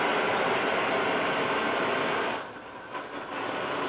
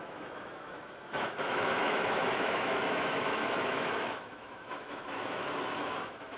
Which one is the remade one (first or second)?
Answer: second